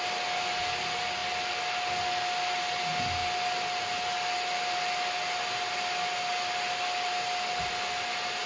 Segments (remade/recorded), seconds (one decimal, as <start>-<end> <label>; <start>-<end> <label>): 0.0-8.5 recorded